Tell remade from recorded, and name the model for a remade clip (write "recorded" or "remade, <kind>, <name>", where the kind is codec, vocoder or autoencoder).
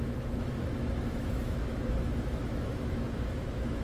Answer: remade, autoencoder, DAC-VAE